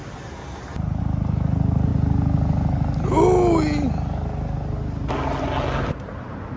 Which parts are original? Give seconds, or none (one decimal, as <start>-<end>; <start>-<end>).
1.9-5.9